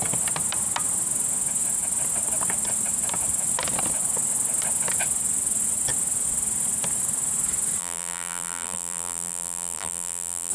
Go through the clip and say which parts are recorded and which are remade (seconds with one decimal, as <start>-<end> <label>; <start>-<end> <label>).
0.0-7.8 recorded; 7.8-10.5 remade